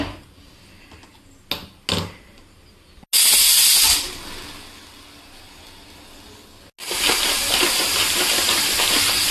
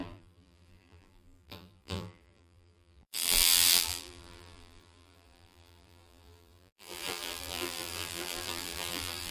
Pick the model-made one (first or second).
second